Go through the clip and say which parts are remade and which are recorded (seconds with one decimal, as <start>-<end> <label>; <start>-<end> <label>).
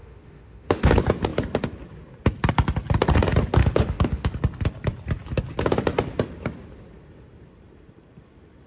0.0-0.9 remade; 0.9-3.6 recorded; 3.6-4.3 remade; 4.3-8.7 recorded